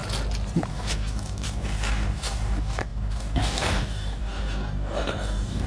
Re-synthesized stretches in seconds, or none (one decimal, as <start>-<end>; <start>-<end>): 0.7-5.7